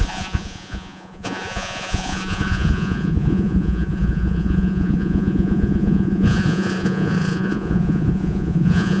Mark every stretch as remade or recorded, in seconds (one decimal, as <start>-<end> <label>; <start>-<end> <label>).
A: 0.0-9.0 remade